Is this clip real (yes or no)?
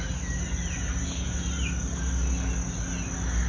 yes